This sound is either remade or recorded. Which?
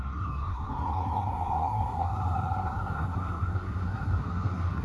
remade